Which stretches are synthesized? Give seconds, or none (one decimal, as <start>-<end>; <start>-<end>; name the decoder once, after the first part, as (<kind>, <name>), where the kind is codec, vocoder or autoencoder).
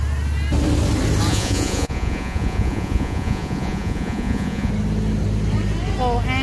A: 1.3-4.7 (vocoder, Vocos)